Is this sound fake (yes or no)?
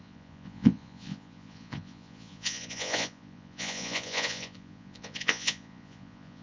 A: yes